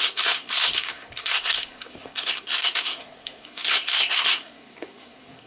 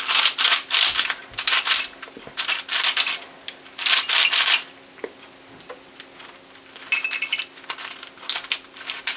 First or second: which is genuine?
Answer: second